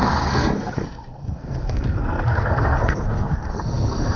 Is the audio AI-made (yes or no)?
yes